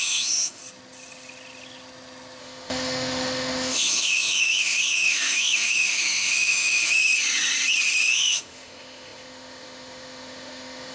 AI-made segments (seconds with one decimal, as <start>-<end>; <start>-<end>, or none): 0.0-0.6; 2.4-7.0; 8.1-10.9